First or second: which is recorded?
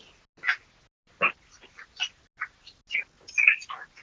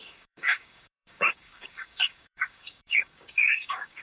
first